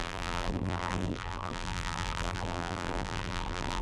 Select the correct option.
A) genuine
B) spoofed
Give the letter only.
B